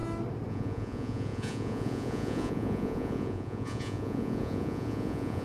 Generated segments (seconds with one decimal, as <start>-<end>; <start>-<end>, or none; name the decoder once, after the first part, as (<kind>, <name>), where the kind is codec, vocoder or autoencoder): 0.5-5.4 (vocoder, Vocos)

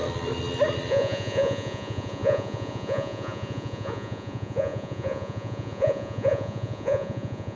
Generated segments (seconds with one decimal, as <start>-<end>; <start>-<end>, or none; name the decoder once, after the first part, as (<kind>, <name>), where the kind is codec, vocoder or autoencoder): 0.9-7.6 (vocoder, Vocos)

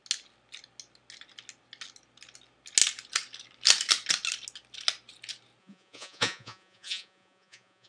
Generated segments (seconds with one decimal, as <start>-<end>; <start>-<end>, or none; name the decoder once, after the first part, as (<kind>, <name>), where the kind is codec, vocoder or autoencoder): 5.6-7.9 (vocoder, Vocos)

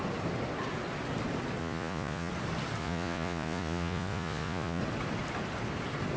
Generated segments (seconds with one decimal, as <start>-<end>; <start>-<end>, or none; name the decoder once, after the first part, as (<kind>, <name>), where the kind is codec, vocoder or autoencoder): 1.6-2.3 (vocoder, Vocos); 2.8-4.8